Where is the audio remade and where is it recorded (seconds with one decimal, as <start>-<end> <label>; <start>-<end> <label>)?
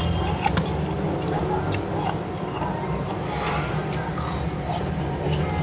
0.0-5.6 recorded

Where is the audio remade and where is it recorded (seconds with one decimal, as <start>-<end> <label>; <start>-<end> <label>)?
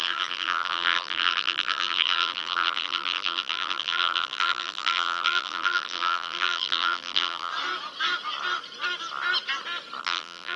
0.0-7.5 remade; 7.5-10.0 recorded; 10.0-10.6 remade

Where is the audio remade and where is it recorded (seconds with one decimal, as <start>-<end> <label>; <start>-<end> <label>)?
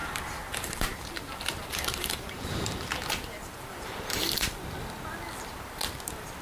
0.0-2.9 remade; 2.9-3.4 recorded; 3.4-4.6 remade; 4.6-6.4 recorded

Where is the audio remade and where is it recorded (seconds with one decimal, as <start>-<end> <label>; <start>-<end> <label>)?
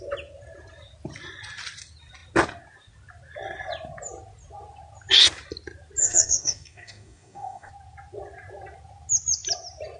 0.0-6.0 recorded; 6.0-7.7 remade; 7.7-10.0 recorded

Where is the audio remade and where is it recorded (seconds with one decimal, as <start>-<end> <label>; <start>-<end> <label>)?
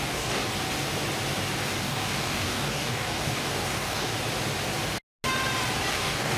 0.0-0.4 remade; 0.4-1.8 recorded; 1.8-4.1 remade; 4.1-5.9 recorded; 5.9-6.4 remade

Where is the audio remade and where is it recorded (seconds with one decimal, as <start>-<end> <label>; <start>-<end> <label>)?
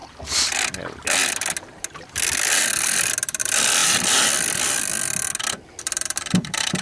0.0-3.4 recorded; 3.4-3.8 remade; 3.8-5.8 recorded; 5.8-6.8 remade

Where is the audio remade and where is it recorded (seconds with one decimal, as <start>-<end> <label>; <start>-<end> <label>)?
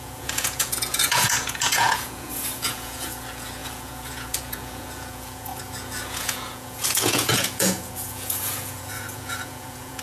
0.0-10.0 remade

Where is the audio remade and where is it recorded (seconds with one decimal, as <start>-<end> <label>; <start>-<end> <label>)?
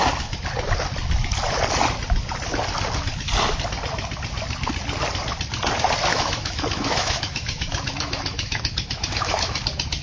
0.0-6.1 recorded; 6.1-9.6 remade; 9.6-10.0 recorded